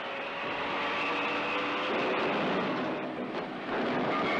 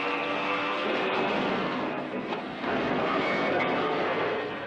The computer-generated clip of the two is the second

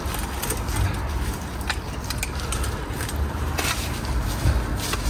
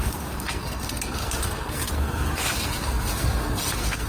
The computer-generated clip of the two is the second